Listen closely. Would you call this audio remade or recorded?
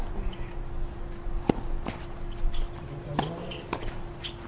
recorded